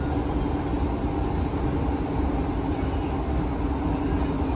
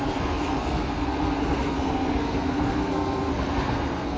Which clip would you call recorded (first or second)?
first